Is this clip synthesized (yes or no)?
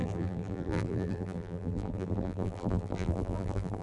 yes